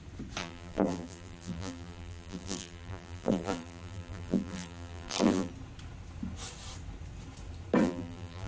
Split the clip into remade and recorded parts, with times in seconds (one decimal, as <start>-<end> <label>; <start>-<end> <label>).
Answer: 0.0-0.4 recorded; 0.4-5.5 remade; 5.5-7.8 recorded; 7.8-8.5 remade